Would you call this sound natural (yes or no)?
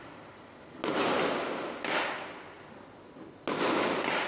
yes